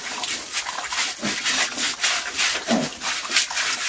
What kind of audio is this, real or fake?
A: real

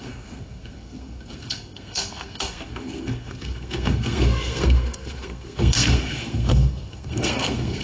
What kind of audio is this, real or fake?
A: fake